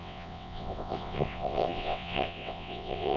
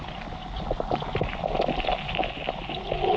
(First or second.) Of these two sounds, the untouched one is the second